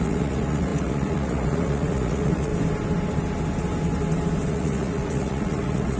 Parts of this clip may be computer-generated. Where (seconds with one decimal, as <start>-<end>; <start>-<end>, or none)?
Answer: 0.0-2.5; 4.5-6.0